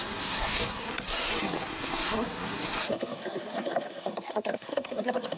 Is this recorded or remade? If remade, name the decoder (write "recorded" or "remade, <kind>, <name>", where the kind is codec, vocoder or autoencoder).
remade, codec, SNAC